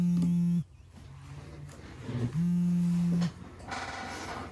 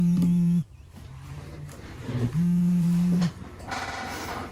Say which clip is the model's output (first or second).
second